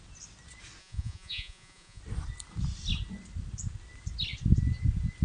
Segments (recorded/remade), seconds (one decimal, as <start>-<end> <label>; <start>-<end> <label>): 0.0-0.8 recorded; 0.8-2.0 remade; 2.0-5.2 recorded